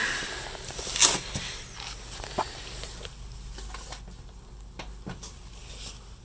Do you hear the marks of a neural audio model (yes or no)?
no